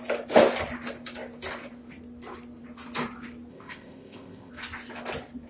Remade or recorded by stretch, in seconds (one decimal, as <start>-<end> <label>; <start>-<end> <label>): 0.0-3.5 recorded; 3.5-4.5 remade; 4.5-5.5 recorded